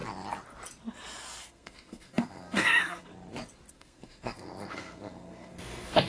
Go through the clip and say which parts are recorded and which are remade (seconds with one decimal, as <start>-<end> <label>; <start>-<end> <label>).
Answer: 0.0-1.4 recorded; 1.4-3.1 remade; 3.1-3.7 recorded; 3.7-6.1 remade